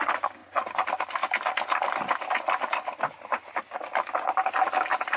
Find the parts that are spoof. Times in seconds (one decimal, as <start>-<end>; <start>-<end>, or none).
none